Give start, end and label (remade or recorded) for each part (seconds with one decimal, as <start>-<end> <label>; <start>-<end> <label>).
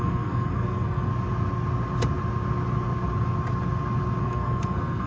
0.0-1.1 remade; 1.1-4.2 recorded; 4.2-5.1 remade